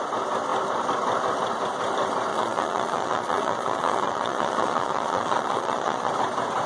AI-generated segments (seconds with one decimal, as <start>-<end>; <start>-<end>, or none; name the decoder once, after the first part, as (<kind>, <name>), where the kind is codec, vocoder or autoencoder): 2.3-6.1 (vocoder, Vocos)